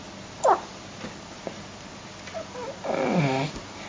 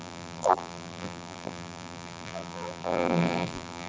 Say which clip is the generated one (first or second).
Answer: second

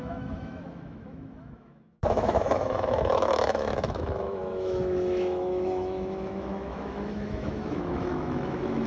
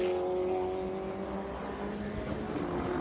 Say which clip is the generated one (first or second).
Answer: first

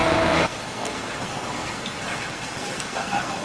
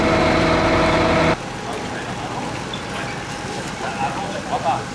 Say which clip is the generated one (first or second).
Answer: first